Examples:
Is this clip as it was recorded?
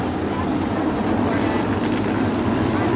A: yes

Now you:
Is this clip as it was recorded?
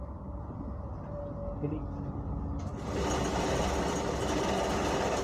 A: yes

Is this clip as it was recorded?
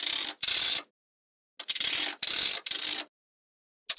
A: yes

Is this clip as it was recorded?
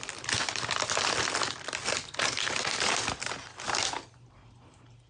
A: yes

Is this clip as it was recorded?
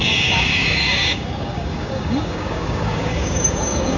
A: no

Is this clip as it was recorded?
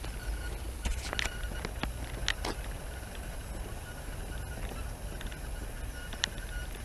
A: yes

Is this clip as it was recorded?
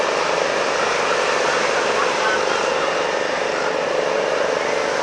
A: yes